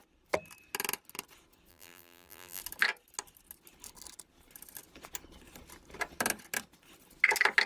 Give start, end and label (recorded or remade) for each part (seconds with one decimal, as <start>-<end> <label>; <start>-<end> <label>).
0.0-1.7 recorded; 1.7-2.6 remade; 2.6-7.7 recorded